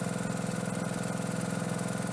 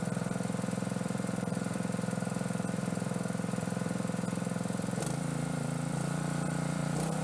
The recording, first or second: first